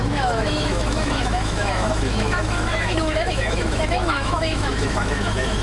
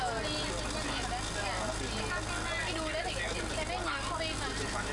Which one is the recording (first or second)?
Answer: second